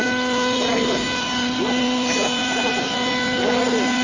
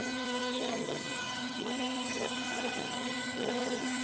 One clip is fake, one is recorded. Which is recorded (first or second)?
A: first